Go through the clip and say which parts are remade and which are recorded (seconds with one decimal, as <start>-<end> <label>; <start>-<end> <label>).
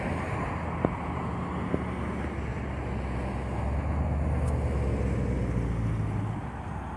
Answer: 0.0-7.0 recorded